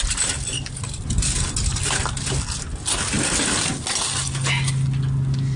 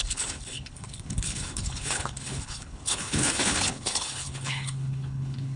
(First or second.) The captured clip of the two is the first